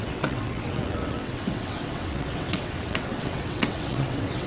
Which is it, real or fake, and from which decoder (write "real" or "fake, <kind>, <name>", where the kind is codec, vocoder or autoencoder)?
fake, vocoder, WaveNeXt